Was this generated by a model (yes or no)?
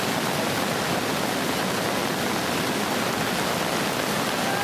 no